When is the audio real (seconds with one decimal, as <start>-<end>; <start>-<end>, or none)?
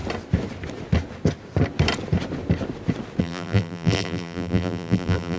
0.0-3.2